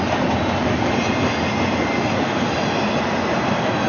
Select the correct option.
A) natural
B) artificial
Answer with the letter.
A